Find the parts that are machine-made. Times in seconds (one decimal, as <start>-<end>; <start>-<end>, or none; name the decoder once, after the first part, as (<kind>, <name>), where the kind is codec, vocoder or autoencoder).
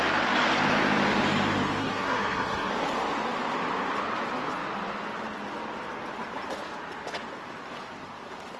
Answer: 1.8-2.7 (codec, SNAC)